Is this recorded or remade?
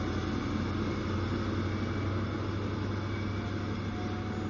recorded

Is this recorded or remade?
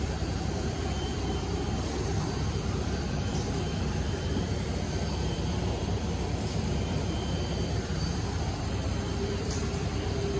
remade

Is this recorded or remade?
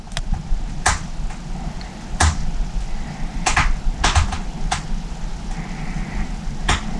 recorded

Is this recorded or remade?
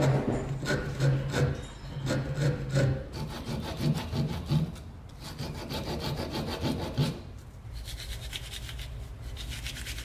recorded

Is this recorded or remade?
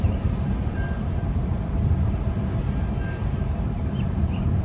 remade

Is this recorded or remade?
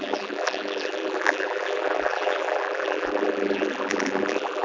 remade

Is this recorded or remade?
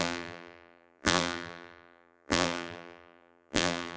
remade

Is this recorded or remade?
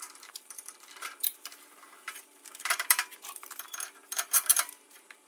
remade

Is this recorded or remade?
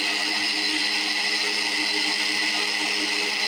recorded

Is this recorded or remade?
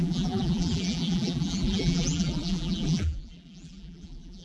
remade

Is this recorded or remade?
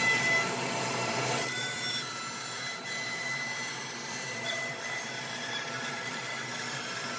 remade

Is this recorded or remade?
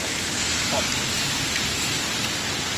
recorded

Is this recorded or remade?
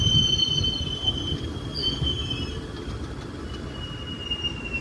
recorded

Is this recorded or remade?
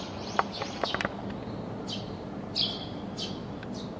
recorded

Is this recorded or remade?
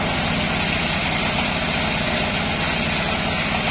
recorded